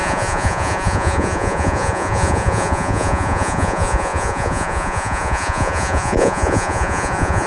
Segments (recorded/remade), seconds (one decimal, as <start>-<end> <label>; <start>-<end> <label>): 0.0-7.5 remade